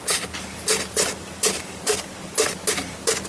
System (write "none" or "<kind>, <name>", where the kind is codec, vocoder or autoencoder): none